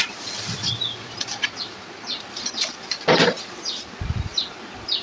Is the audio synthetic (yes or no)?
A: no